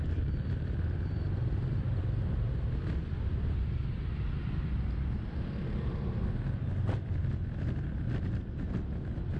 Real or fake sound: real